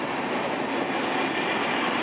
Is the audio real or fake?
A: real